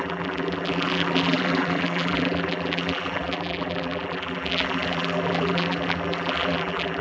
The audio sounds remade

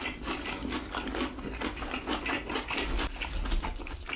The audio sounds recorded